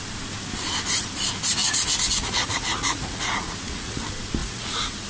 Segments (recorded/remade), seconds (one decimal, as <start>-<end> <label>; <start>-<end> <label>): 0.0-1.6 recorded; 1.6-4.0 remade; 4.0-4.4 recorded; 4.4-5.1 remade